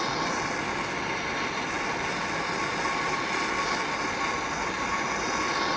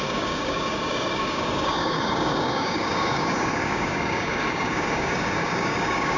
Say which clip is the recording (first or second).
first